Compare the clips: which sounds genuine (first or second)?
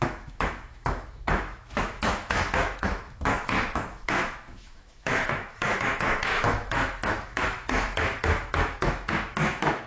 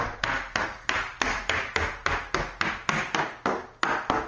second